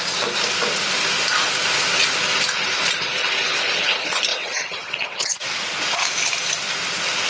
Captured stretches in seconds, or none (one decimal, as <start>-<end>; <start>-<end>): 0.0-4.3; 5.5-7.3